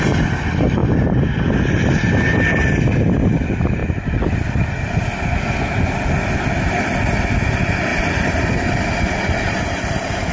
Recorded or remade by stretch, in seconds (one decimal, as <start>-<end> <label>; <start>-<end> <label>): 0.0-10.3 recorded

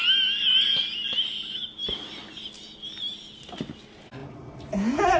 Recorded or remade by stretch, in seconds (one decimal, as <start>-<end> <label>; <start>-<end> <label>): 0.0-5.2 recorded